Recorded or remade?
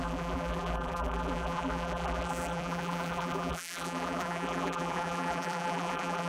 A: remade